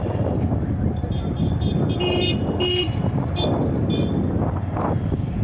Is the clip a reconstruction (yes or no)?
no